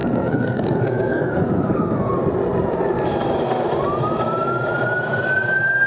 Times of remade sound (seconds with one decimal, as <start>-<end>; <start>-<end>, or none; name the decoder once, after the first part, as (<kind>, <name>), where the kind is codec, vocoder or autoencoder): 0.0-2.1 (codec, SNAC)